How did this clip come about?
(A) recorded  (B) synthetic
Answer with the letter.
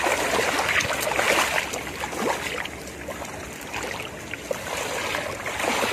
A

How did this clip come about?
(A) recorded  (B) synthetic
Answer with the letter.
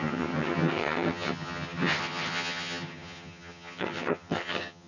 B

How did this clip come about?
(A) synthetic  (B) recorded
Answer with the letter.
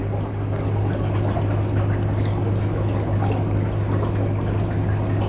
B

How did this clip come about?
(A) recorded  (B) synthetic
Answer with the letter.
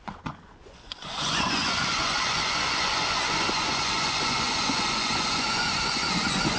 B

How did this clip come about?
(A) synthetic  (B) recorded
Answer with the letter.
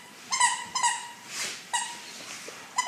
B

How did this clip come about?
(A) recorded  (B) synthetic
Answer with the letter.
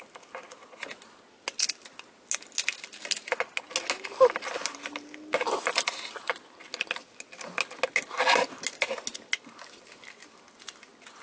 A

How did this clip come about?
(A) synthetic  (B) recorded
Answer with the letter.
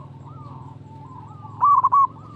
A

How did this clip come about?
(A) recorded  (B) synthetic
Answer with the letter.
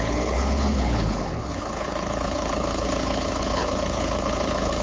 B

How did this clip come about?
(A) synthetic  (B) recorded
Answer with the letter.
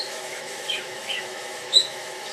A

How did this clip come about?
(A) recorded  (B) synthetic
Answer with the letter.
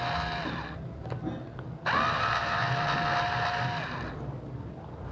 A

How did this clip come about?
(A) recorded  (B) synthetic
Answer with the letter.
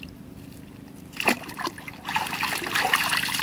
A